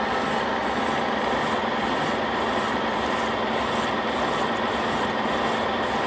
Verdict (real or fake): real